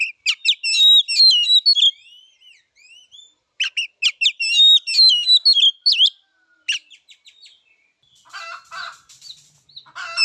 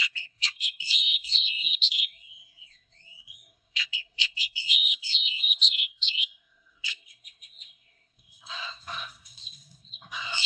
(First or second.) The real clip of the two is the first